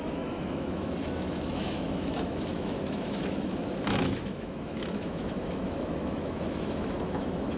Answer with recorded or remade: remade